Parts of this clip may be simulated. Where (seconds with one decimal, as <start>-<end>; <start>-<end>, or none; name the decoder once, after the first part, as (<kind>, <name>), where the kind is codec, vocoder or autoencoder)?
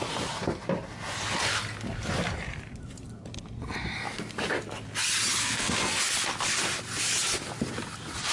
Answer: 5.4-6.0 (codec, SNAC)